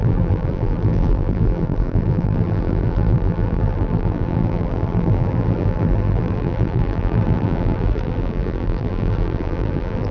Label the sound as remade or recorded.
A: remade